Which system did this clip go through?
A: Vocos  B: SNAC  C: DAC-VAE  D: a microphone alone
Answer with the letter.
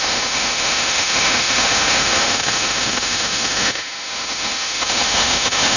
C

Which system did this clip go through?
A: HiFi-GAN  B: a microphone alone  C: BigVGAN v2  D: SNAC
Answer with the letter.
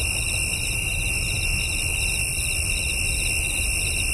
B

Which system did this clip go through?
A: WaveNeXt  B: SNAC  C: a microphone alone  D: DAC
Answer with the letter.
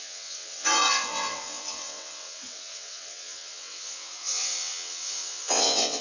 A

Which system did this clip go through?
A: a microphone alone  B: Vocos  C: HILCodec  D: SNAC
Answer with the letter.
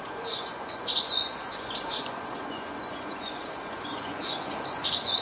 B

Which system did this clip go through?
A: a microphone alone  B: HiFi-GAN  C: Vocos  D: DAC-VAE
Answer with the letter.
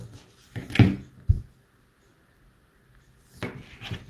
A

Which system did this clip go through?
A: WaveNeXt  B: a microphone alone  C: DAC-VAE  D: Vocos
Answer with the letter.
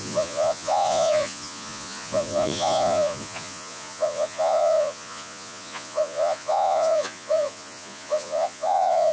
D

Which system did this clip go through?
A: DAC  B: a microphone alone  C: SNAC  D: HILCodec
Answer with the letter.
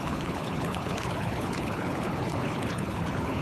D